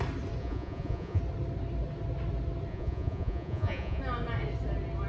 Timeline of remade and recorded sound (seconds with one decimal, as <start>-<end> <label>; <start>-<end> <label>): 0.0-0.4 recorded; 0.4-1.2 remade; 1.2-2.7 recorded; 2.7-4.0 remade; 4.0-5.1 recorded